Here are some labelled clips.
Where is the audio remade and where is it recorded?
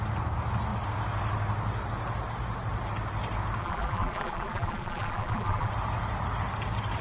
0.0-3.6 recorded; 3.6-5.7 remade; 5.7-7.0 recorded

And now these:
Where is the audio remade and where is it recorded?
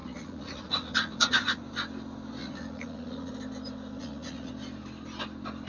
0.0-1.6 remade; 1.6-2.4 recorded; 2.4-3.3 remade; 3.3-4.0 recorded; 4.0-4.5 remade; 4.5-5.7 recorded